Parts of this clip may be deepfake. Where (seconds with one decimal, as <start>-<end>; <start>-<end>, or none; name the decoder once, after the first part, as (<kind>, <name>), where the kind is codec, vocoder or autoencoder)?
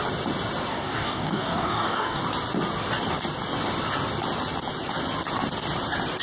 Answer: 0.7-2.2 (codec, DAC)